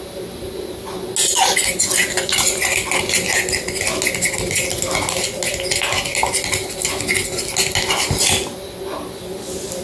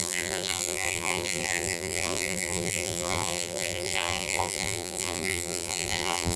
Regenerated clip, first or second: second